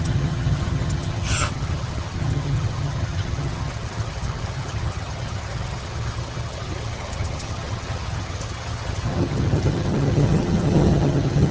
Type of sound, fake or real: fake